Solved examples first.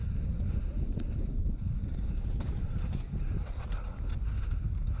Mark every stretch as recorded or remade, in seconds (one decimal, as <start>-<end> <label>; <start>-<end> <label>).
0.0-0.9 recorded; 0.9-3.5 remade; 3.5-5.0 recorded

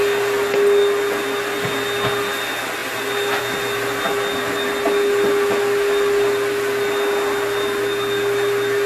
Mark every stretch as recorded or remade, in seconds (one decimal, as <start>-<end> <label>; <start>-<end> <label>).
0.0-8.9 recorded

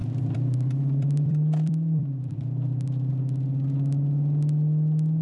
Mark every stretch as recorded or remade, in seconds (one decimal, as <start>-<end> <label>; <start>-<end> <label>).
0.0-3.1 remade; 3.1-5.2 recorded

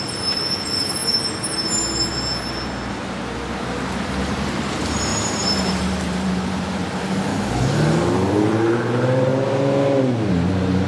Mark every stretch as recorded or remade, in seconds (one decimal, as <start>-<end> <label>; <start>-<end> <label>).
0.0-1.0 remade; 1.0-4.2 recorded; 4.2-7.3 remade; 7.3-8.3 recorded; 8.3-9.3 remade; 9.3-10.3 recorded; 10.3-10.9 remade

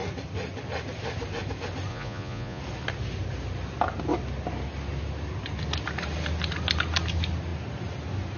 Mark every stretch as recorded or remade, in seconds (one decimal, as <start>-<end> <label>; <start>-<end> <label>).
0.0-1.9 recorded; 1.9-2.6 remade; 2.6-8.4 recorded

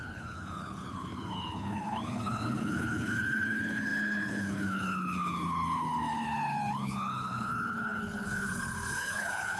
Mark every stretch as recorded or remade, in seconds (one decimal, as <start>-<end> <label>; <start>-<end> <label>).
0.0-9.6 remade

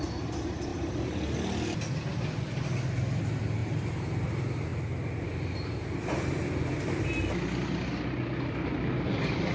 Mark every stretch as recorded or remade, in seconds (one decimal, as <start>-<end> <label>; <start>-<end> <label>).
0.0-3.6 recorded; 3.6-4.3 remade; 4.3-9.5 recorded

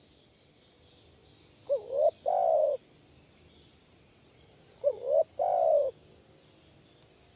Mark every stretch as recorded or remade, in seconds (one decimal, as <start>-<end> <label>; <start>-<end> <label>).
0.0-3.8 recorded; 3.8-5.0 remade; 5.0-7.4 recorded